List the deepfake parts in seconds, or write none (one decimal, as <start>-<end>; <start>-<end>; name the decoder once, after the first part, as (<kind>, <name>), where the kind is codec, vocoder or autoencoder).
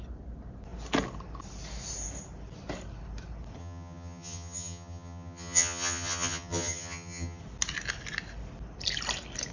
3.6-7.4 (vocoder, HiFi-GAN)